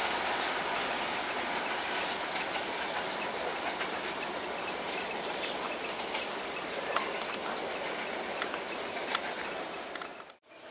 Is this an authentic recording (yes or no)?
yes